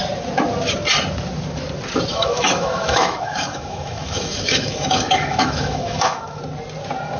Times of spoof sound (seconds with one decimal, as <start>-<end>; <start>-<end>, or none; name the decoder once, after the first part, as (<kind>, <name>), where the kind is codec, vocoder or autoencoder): 2.1-6.4 (autoencoder, DAC-VAE)